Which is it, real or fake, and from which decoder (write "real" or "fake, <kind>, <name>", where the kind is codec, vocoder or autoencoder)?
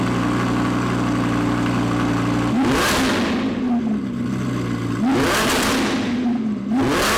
real